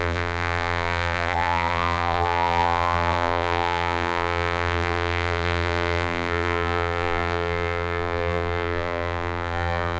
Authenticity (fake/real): fake